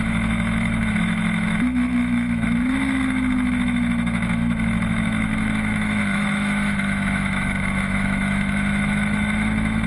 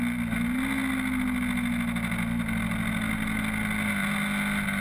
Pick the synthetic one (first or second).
first